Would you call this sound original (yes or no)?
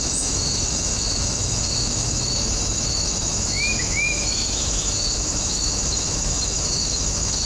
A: no